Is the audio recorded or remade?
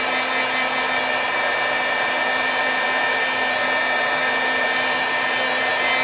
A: recorded